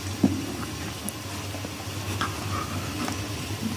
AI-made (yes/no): no